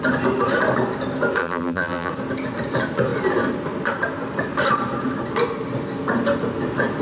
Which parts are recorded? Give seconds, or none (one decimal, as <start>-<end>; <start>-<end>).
0.0-1.4; 2.1-7.0